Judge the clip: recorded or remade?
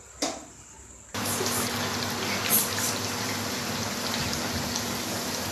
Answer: recorded